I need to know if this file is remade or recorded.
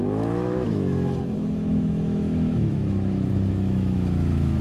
remade